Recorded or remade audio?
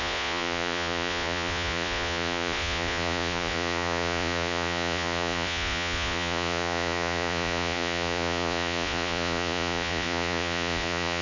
remade